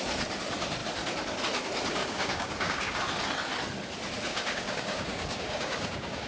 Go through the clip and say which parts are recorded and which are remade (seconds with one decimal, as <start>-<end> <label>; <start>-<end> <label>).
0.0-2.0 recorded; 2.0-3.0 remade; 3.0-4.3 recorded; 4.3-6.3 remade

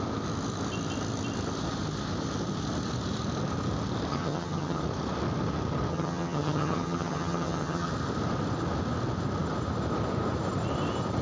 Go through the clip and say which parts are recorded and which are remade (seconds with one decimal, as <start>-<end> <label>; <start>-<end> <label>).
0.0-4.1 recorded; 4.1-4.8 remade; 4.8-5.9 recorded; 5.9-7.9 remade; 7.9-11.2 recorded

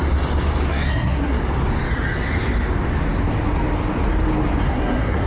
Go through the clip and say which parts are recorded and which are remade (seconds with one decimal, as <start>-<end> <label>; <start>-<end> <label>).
0.0-0.7 recorded; 0.7-1.4 remade; 1.4-4.6 recorded; 4.6-5.3 remade

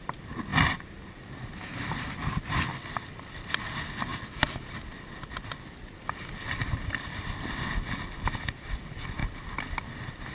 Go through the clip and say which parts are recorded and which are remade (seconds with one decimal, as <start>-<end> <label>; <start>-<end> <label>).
0.0-10.3 recorded

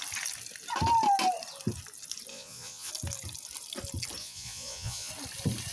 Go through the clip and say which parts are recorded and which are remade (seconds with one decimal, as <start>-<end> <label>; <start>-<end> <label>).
0.0-2.3 recorded; 2.3-2.9 remade; 2.9-4.2 recorded; 4.2-5.1 remade; 5.1-5.7 recorded